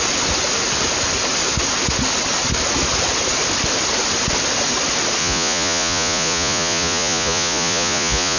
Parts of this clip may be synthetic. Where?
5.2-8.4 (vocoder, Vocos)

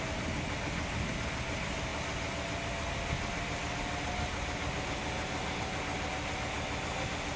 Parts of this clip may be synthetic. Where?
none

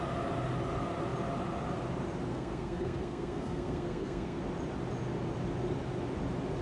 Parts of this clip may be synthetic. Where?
2.3-4.4 (codec, SNAC)